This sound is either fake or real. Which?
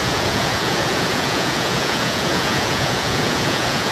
fake